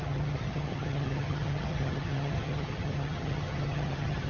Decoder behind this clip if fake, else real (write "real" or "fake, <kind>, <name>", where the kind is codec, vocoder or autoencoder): fake, vocoder, HiFi-GAN